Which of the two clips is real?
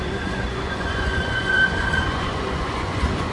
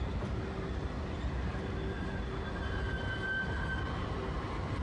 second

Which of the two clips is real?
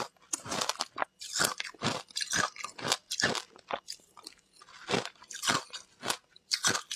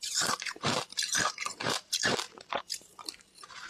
first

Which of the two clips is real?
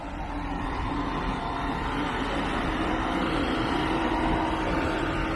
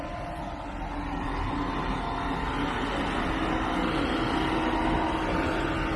second